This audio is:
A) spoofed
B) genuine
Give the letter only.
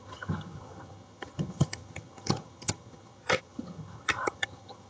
A